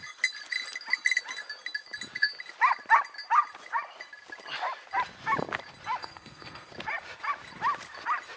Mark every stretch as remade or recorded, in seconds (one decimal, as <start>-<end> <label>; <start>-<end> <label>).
0.0-6.0 recorded; 6.0-6.7 remade; 6.7-8.4 recorded